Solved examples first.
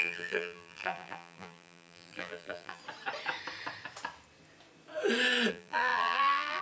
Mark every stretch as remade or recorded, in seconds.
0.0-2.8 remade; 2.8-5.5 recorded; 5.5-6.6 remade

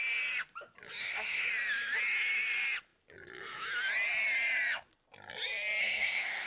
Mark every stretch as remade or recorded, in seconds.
0.0-1.0 recorded; 1.0-1.5 remade; 1.5-5.8 recorded; 5.8-6.5 remade

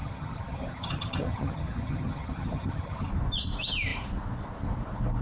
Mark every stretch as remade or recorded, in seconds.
0.0-3.1 remade; 3.1-5.2 recorded

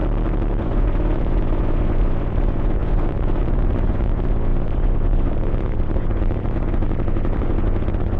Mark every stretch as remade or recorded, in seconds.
0.0-0.6 recorded; 0.6-8.2 remade

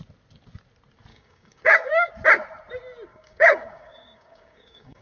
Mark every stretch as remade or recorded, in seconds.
0.0-1.1 recorded; 1.1-2.1 remade; 2.1-3.1 recorded; 3.1-5.0 remade

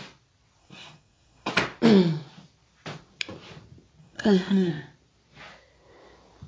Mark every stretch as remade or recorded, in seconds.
0.0-0.6 recorded; 0.6-1.5 remade; 1.5-4.0 recorded; 4.0-4.7 remade; 4.7-6.5 recorded

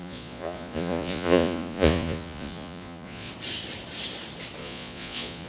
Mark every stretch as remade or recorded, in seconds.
0.0-3.3 remade; 3.3-4.6 recorded; 4.6-5.5 remade